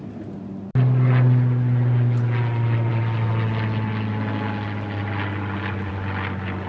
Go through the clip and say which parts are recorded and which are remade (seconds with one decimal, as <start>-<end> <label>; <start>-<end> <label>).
0.0-6.7 recorded